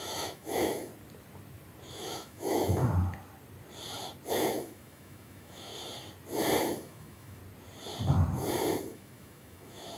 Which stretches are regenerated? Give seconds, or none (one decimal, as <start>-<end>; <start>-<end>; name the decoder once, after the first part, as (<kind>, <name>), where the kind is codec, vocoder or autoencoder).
0.0-0.9 (autoencoder, DAC-VAE); 1.9-2.8; 4.3-5.7; 6.6-7.4; 8.8-10.0